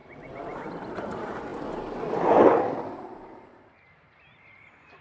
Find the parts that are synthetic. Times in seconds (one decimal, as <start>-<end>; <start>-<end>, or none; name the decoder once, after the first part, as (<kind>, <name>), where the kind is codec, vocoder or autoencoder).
0.0-1.5 (vocoder, BigVGAN v2); 3.0-5.0